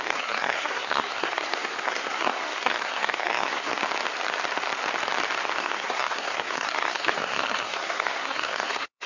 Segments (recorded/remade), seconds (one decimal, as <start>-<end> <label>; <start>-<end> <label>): 0.0-3.7 remade; 3.7-5.6 recorded; 5.6-9.1 remade